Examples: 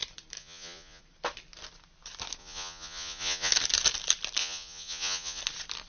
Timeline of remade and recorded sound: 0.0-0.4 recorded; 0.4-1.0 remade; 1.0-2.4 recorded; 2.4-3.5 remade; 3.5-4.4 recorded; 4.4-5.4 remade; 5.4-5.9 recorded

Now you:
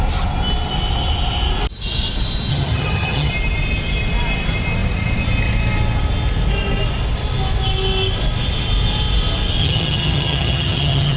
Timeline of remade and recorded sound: 0.0-2.5 recorded; 2.5-3.3 remade; 3.3-9.6 recorded; 9.6-11.2 remade

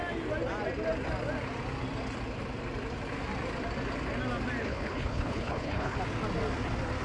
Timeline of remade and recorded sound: 0.0-4.6 recorded; 4.6-6.0 remade; 6.0-7.0 recorded

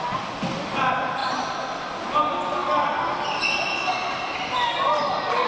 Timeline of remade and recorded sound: 0.0-1.2 recorded; 1.2-2.2 remade; 2.2-2.6 recorded; 2.6-3.1 remade; 3.1-4.3 recorded; 4.3-5.5 remade

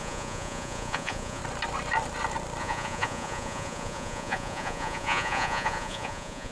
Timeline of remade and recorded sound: 0.0-1.4 remade; 1.4-2.6 recorded; 2.6-6.5 remade

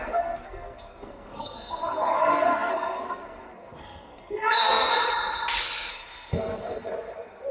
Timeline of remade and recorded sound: 0.0-4.9 remade; 4.9-5.9 recorded; 5.9-7.5 remade

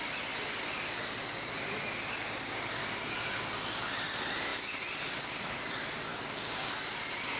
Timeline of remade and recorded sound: 0.0-6.1 recorded; 6.1-6.7 remade; 6.7-7.4 recorded

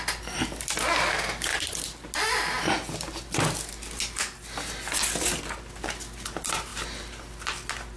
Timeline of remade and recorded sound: 0.0-8.0 recorded